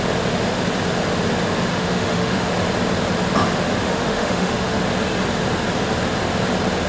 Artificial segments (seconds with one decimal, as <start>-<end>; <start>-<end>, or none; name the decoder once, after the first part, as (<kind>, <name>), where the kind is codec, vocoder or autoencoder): 1.7-2.5 (autoencoder, DAC-VAE); 3.8-4.8